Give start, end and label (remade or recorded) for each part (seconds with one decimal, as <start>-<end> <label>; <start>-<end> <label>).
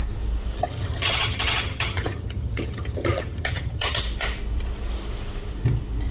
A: 0.0-0.6 recorded; 0.6-4.0 remade; 4.0-6.1 recorded